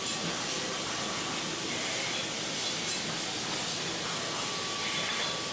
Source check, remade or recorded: recorded